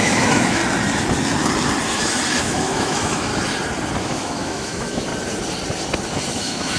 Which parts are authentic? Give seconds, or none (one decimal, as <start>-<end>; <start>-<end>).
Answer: 0.6-2.4; 3.3-4.0; 5.1-6.3